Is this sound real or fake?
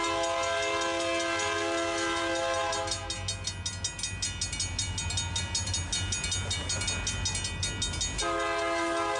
real